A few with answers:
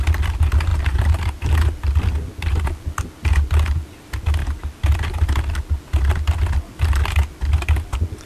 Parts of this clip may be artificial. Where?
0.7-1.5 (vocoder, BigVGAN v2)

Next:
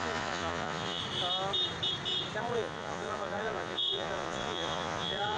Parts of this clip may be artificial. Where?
0.0-1.0 (vocoder, Vocos); 2.4-5.4